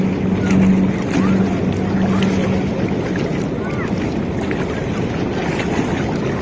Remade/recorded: recorded